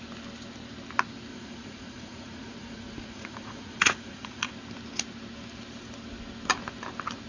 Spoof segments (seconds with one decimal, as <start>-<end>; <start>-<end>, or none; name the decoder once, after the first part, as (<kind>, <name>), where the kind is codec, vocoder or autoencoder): 1.3-4.5 (vocoder, Vocos)